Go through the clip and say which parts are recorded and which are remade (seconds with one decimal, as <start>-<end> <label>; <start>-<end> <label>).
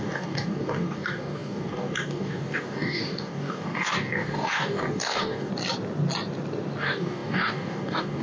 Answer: 0.0-5.5 remade; 5.5-6.8 recorded; 6.8-8.2 remade